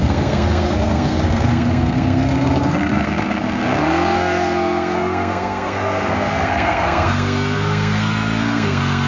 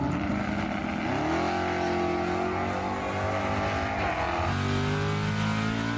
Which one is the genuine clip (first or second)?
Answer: second